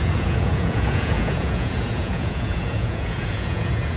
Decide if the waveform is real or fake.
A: fake